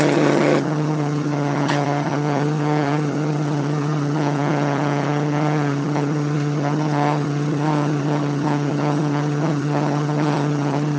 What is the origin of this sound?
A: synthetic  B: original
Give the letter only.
A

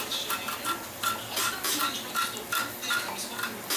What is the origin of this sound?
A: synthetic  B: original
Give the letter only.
B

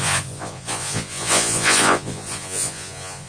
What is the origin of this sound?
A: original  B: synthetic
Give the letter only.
B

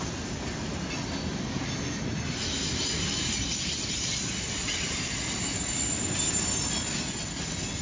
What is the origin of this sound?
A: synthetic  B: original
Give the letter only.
B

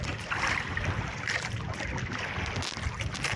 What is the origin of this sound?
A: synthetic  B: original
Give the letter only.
B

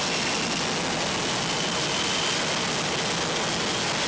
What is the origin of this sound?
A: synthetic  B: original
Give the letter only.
B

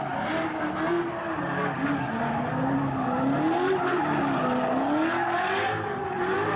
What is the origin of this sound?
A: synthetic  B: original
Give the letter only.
B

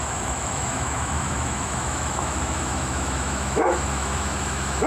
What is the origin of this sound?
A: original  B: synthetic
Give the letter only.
B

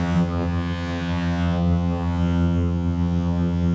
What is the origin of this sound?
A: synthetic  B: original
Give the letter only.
A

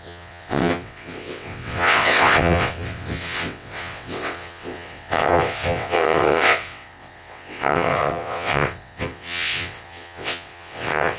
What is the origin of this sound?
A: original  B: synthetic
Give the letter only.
B